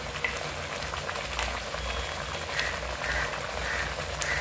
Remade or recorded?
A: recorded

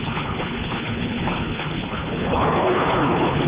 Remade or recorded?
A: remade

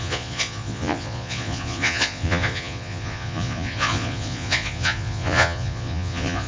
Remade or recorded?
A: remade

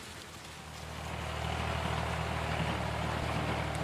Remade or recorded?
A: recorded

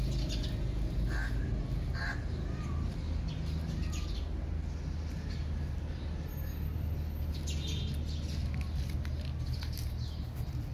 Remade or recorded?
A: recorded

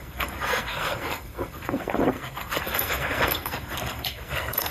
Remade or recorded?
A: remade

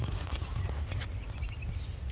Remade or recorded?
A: recorded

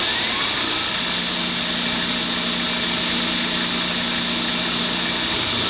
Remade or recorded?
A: recorded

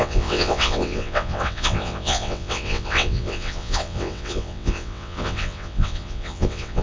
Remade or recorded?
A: remade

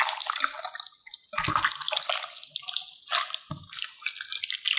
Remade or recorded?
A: recorded